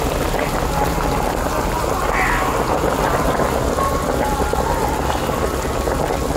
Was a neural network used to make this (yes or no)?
no